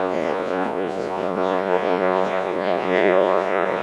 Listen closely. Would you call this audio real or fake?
fake